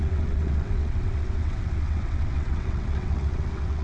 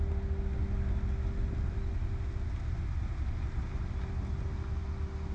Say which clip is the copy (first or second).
first